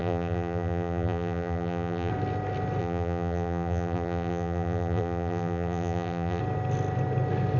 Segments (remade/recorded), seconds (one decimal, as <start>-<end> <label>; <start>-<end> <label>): 0.0-2.1 remade; 2.1-2.8 recorded; 2.8-6.4 remade; 6.4-7.6 recorded